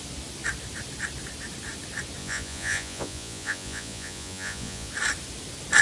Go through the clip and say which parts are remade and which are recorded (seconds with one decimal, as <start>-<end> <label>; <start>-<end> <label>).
0.0-2.2 recorded; 2.2-4.9 remade; 4.9-5.8 recorded